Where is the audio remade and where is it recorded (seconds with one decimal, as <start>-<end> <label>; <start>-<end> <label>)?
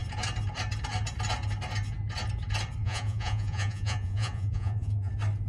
0.0-2.8 recorded; 2.8-5.1 remade; 5.1-5.5 recorded